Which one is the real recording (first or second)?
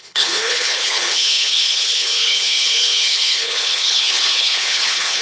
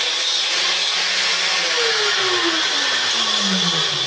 second